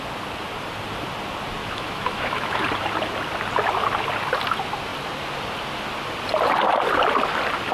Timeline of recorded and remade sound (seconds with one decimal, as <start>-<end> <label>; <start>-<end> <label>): 0.0-1.6 recorded; 1.6-2.6 remade; 2.6-7.7 recorded